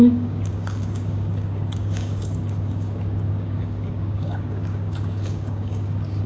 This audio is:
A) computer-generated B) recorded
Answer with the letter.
A